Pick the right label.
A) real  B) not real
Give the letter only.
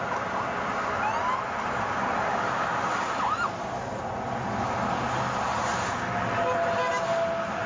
A